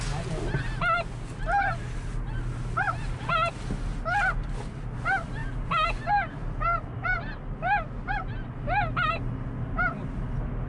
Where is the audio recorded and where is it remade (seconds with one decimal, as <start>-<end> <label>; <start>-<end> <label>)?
0.0-10.7 recorded